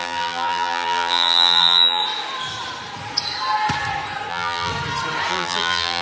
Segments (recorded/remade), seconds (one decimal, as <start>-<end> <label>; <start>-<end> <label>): 0.0-2.0 remade; 2.0-4.3 recorded; 4.3-4.7 remade; 4.7-5.3 recorded; 5.3-6.0 remade

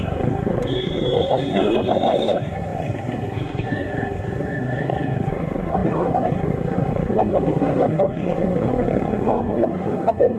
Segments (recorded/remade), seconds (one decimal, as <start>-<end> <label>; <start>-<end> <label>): 0.0-10.4 remade

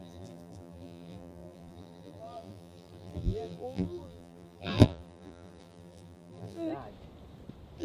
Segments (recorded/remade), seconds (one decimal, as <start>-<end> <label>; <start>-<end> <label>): 0.0-6.7 remade; 6.7-7.8 recorded

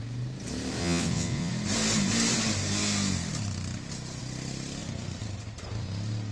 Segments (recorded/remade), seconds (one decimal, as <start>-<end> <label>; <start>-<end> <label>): 0.0-0.8 recorded; 0.8-1.5 remade; 1.5-6.3 recorded

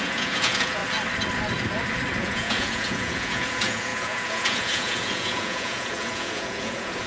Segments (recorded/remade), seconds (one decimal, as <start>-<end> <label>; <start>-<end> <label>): 0.0-0.8 remade; 0.8-2.2 recorded; 2.2-7.1 remade

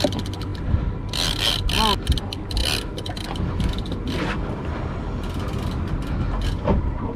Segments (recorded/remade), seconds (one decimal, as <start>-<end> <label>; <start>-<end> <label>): 0.0-7.2 recorded

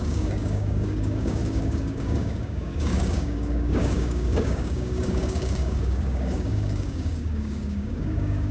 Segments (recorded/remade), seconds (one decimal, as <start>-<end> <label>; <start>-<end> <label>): 0.0-8.5 remade

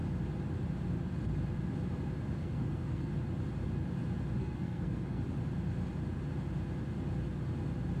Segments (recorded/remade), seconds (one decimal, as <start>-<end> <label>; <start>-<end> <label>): 0.0-2.4 recorded; 2.4-3.1 remade; 3.1-4.4 recorded; 4.4-5.2 remade; 5.2-8.0 recorded